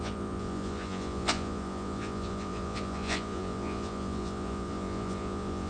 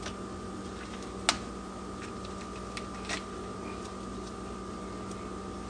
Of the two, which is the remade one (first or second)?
first